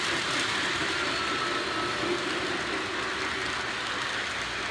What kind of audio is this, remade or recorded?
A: recorded